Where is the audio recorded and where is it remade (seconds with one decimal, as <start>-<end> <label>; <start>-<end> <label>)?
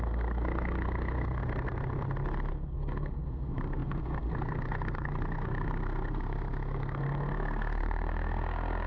0.0-1.4 remade; 1.4-2.5 recorded; 2.5-8.9 remade